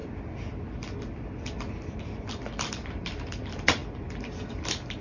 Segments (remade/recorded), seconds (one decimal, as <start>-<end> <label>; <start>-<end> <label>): 0.0-2.8 recorded; 2.8-5.0 remade